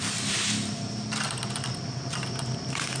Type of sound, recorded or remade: remade